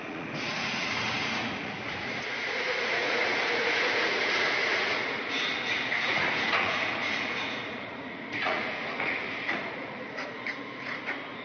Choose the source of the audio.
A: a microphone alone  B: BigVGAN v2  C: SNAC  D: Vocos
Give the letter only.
D